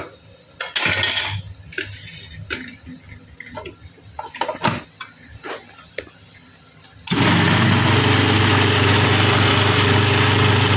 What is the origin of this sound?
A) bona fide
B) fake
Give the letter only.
A